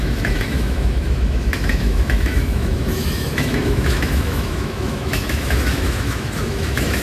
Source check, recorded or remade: remade